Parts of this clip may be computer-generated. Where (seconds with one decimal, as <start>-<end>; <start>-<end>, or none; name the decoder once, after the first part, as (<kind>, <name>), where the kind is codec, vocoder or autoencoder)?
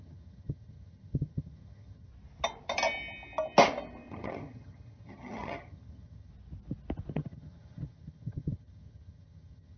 0.0-2.1 (vocoder, HiFi-GAN); 4.1-6.3; 7.1-9.8